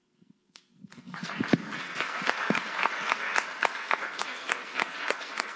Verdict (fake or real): fake